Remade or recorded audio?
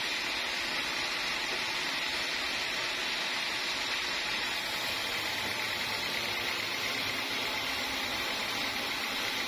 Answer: recorded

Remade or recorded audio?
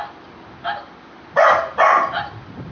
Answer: recorded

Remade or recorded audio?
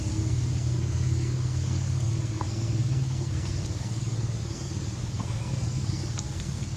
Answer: remade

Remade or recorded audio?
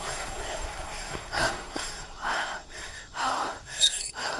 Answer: remade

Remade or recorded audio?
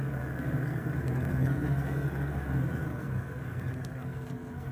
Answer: remade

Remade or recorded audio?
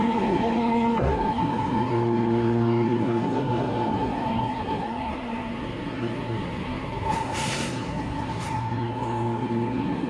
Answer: remade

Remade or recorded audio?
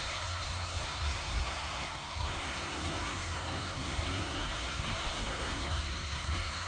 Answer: remade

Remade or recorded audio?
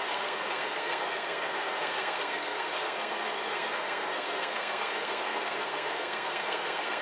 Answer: remade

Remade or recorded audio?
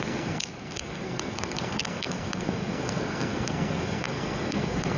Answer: remade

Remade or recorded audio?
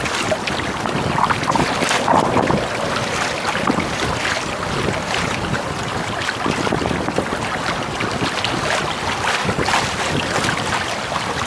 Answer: recorded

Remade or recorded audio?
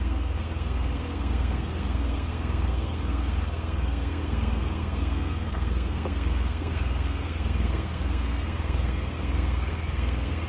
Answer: remade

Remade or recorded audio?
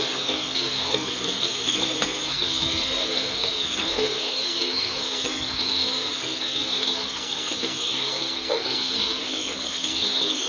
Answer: remade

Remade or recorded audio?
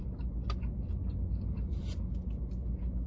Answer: recorded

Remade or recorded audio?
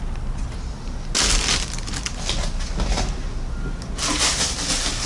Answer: recorded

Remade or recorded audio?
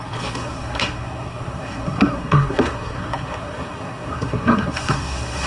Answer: remade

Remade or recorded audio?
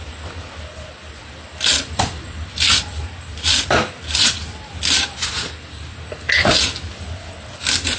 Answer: recorded